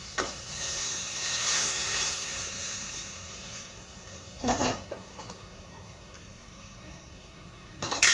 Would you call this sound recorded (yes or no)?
no